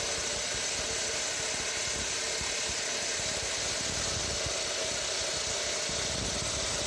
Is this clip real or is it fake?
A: real